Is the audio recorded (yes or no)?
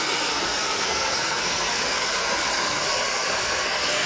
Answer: no